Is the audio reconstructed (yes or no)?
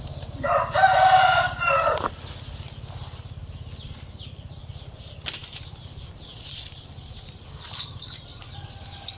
no